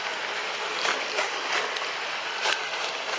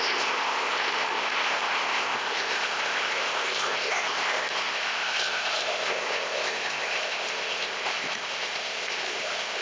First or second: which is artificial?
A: second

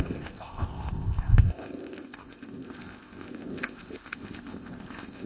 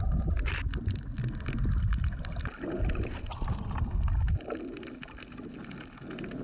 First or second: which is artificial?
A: first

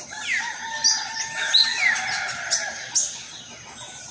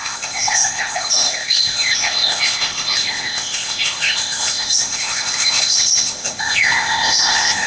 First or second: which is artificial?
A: second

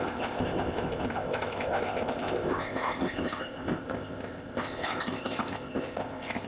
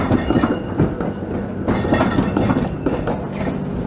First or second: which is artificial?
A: first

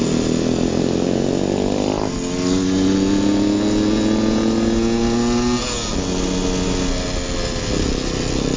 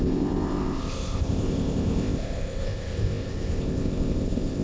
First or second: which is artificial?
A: second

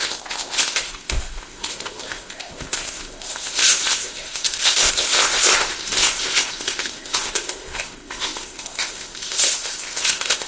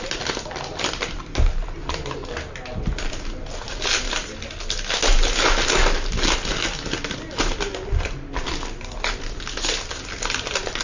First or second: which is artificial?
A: first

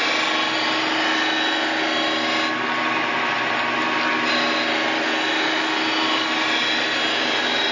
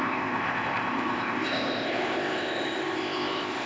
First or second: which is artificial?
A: second